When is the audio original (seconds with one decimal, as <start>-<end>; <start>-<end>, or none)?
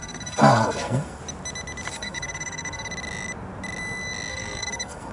1.2-1.9; 2.9-4.3